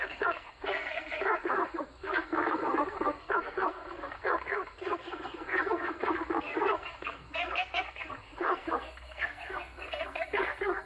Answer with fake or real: fake